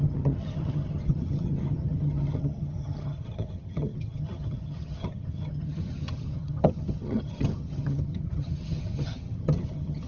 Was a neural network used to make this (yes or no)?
yes